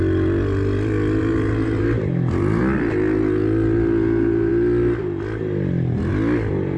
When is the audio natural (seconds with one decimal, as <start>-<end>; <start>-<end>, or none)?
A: 0.0-1.2; 2.6-6.8